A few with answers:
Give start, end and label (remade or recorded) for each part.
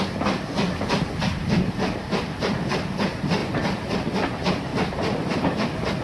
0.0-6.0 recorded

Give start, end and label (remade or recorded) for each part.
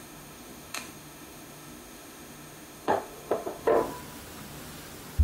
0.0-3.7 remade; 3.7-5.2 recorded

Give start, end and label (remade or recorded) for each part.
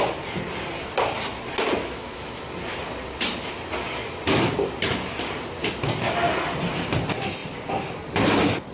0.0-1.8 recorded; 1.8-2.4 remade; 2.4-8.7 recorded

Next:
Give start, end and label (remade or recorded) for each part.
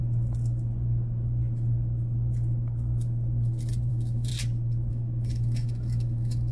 0.0-3.9 recorded; 3.9-4.3 remade; 4.3-4.9 recorded; 4.9-6.5 remade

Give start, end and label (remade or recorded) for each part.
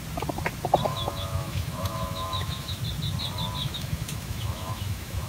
0.0-0.9 recorded; 0.9-2.8 remade; 2.8-3.6 recorded; 3.6-5.3 remade